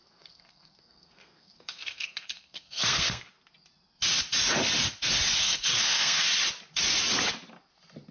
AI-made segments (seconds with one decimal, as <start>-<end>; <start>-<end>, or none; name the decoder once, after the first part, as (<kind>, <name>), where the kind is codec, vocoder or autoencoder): 0.0-3.2 (codec, SNAC); 5.4-6.2